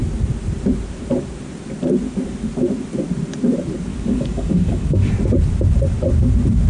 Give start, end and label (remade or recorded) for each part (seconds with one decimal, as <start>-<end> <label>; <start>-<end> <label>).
0.0-3.9 recorded; 3.9-5.1 remade; 5.1-6.7 recorded